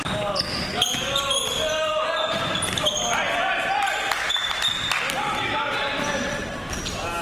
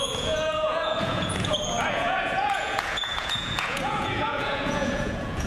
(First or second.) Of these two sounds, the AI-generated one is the second